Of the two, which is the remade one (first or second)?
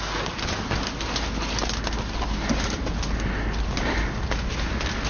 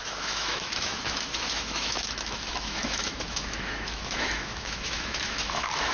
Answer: second